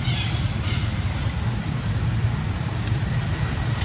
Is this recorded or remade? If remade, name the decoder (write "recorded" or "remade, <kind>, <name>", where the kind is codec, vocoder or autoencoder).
remade, vocoder, BigVGAN v2